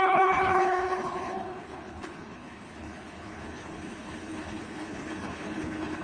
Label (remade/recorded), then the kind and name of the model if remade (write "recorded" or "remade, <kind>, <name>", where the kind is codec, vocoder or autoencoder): remade, codec, HILCodec